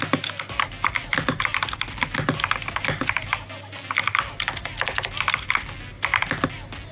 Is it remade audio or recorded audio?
recorded